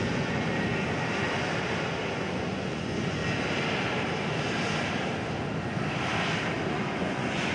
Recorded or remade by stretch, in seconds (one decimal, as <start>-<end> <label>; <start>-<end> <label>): 0.0-0.5 remade; 0.5-2.1 recorded; 2.1-3.2 remade; 3.2-6.7 recorded; 6.7-7.5 remade